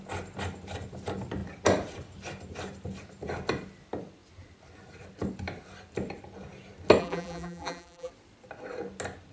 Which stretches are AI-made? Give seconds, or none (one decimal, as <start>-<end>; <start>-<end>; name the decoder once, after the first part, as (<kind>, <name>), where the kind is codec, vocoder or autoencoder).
7.0-8.1 (vocoder, BigVGAN v2)